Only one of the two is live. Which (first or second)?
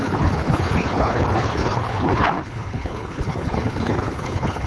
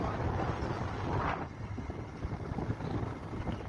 second